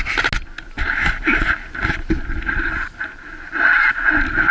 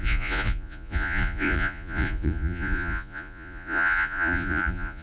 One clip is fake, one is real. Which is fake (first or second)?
second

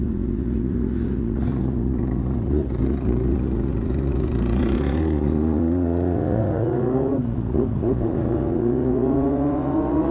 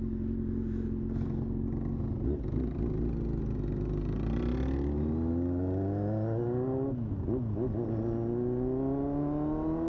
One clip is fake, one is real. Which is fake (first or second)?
first